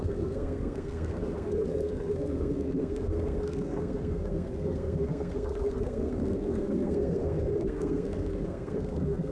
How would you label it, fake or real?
fake